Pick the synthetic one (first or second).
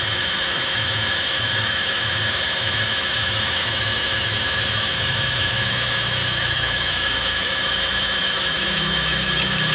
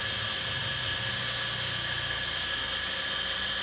first